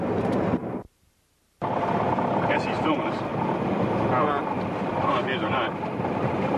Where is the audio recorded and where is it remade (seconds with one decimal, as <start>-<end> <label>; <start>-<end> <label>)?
0.0-0.6 remade; 0.6-2.4 recorded; 2.4-3.3 remade; 3.3-5.0 recorded; 5.0-6.6 remade